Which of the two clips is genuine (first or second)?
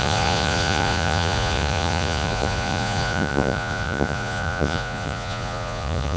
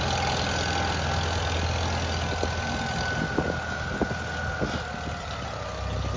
second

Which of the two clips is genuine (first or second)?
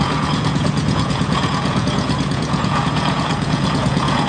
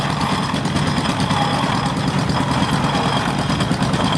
second